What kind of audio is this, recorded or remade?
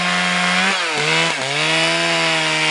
recorded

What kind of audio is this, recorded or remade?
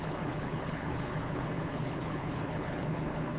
remade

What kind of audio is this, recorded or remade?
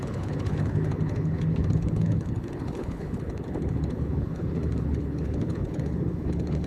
remade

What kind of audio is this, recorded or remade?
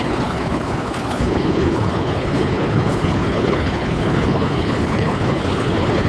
remade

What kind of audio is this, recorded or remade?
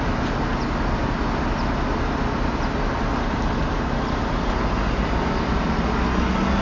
recorded